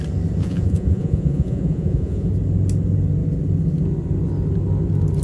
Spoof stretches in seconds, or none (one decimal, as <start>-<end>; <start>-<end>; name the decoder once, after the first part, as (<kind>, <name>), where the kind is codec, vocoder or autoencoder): 0.4-2.3 (vocoder, Vocos)